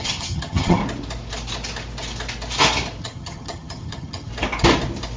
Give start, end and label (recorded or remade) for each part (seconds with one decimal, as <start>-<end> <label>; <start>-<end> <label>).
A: 0.0-0.8 remade; 0.8-3.0 recorded; 3.0-4.3 remade; 4.3-5.2 recorded